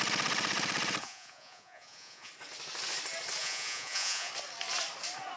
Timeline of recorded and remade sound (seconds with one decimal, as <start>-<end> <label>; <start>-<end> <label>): 0.0-1.0 recorded; 1.0-2.3 remade; 2.3-3.4 recorded; 3.4-4.3 remade; 4.3-5.4 recorded